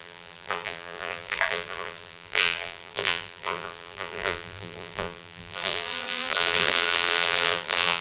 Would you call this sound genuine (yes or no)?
no